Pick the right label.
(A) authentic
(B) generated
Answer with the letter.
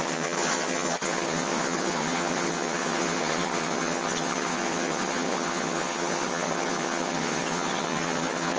B